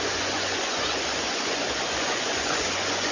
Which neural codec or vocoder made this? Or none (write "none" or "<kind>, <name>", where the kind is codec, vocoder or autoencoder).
vocoder, Vocos